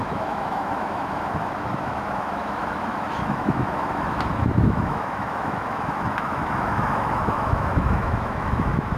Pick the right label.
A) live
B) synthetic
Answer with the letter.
B